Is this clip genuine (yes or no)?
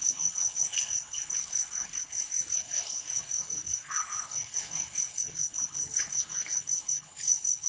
no